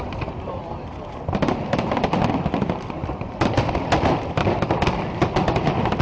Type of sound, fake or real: real